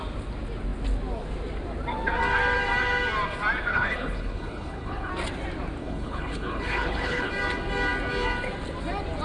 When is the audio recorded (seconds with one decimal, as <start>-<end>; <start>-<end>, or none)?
0.0-3.7; 5.1-5.8; 7.3-9.2